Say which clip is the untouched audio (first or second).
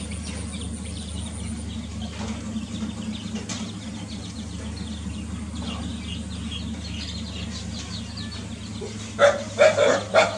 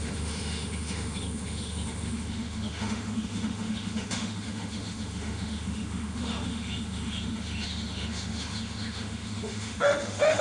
first